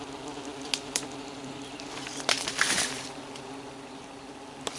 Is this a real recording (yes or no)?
yes